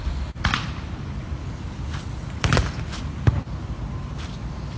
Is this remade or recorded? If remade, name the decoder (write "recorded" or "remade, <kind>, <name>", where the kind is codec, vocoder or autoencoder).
recorded